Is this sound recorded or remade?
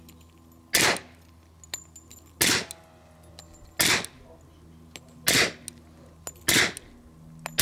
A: recorded